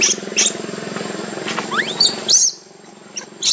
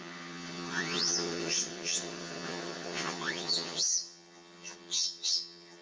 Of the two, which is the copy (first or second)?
second